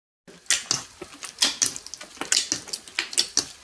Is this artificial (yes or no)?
no